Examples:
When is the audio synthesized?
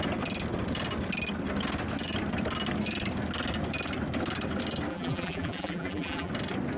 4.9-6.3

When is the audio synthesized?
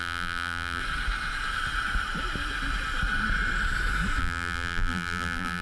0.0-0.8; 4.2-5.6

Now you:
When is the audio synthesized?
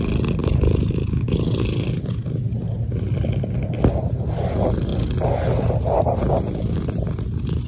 0.4-1.9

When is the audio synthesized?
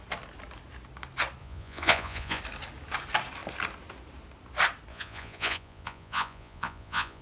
1.4-2.4; 4.9-7.2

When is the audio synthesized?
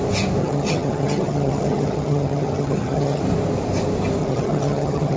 0.4-3.2; 4.2-5.2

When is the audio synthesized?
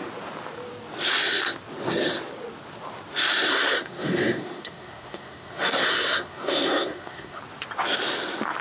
3.5-7.4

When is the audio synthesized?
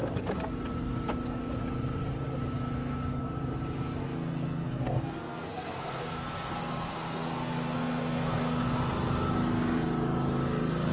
4.0-8.6